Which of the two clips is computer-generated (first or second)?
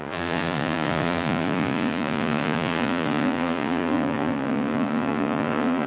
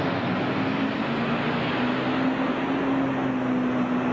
first